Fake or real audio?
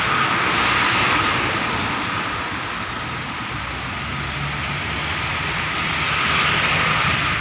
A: real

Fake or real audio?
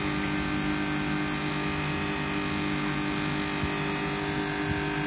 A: real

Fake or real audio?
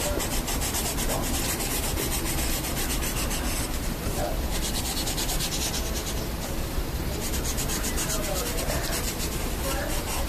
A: real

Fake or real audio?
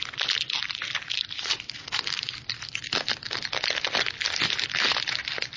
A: real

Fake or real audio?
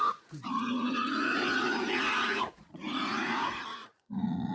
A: fake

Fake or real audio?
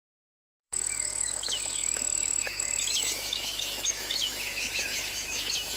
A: fake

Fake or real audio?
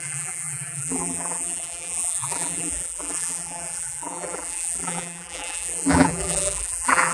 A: fake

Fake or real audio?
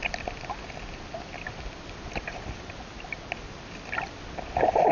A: real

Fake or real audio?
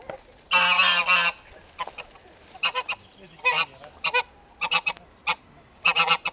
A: real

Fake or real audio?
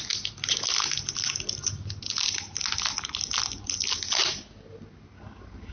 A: real